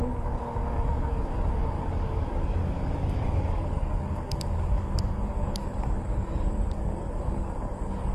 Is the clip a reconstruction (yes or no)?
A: yes